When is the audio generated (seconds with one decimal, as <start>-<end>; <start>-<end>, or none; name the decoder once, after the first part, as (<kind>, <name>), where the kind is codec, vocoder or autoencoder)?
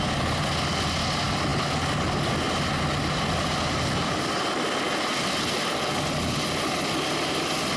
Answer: none